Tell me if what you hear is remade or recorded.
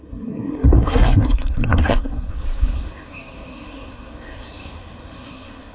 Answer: remade